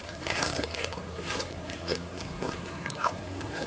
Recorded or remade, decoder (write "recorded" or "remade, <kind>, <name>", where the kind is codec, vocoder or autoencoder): remade, codec, SNAC